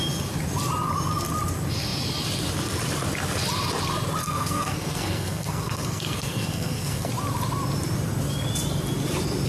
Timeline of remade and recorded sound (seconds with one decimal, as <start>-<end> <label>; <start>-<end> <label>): 0.0-4.2 recorded; 4.2-7.1 remade; 7.1-9.5 recorded